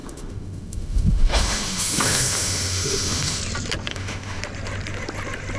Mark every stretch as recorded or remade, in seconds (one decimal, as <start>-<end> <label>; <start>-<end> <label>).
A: 0.0-3.4 remade; 3.4-3.9 recorded; 3.9-4.4 remade; 4.4-5.6 recorded

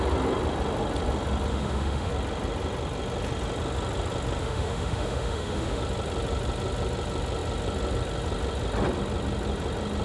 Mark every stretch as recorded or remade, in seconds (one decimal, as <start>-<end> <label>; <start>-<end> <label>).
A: 0.0-1.5 recorded; 1.5-2.1 remade; 2.1-4.4 recorded; 4.4-5.8 remade; 5.8-10.0 recorded

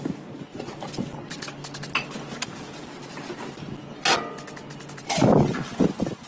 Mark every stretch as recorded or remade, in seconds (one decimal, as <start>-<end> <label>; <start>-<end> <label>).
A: 0.0-6.3 recorded

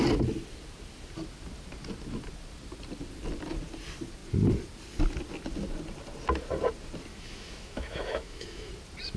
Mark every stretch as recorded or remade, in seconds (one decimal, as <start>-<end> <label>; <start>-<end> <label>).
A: 0.0-7.1 recorded; 7.1-8.7 remade; 8.7-9.2 recorded

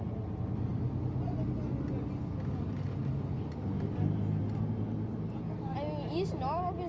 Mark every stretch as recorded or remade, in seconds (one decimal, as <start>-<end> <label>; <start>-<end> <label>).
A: 0.0-6.9 recorded

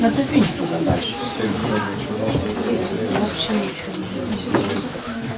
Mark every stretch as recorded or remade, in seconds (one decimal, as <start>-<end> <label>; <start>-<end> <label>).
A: 0.0-1.6 remade; 1.6-4.8 recorded; 4.8-5.4 remade

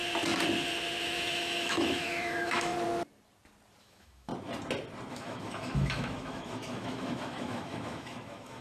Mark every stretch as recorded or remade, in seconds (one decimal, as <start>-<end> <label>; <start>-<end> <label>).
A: 0.0-1.0 recorded; 1.0-2.7 remade; 2.7-3.8 recorded; 3.8-4.3 remade; 4.3-5.1 recorded; 5.1-8.6 remade

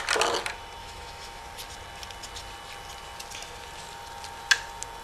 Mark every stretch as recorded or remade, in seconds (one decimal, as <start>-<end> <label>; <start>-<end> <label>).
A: 0.0-0.8 recorded; 0.8-1.4 remade; 1.4-5.0 recorded